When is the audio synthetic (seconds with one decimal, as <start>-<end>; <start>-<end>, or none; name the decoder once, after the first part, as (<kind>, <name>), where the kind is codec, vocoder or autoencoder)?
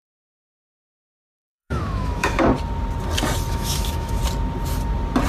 0.0-2.5 (autoencoder, DAC-VAE); 3.5-4.2